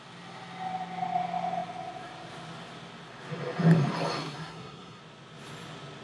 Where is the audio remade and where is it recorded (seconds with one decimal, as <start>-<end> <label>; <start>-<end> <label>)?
0.0-4.2 recorded; 4.2-5.0 remade; 5.0-6.0 recorded